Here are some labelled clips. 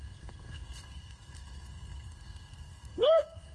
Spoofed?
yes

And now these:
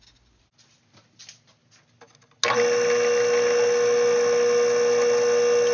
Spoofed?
no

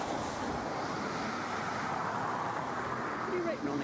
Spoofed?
no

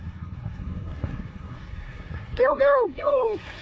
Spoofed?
yes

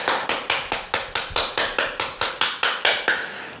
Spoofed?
no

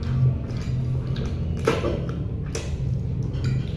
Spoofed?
no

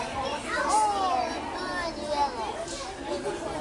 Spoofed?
no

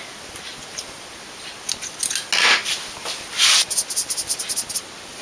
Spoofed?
no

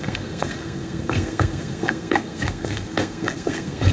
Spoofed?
yes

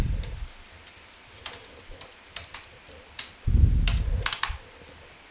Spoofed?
no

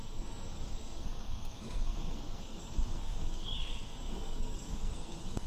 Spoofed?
yes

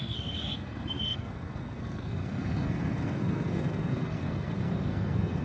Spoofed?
yes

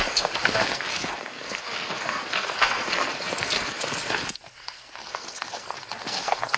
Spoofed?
yes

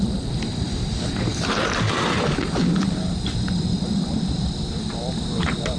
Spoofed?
no